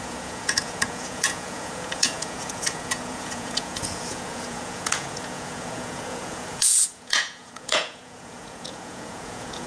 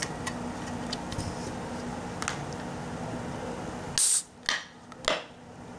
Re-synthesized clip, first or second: first